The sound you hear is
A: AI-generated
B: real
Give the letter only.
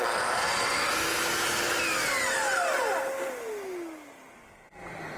B